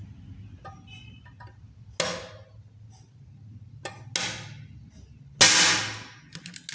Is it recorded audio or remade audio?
recorded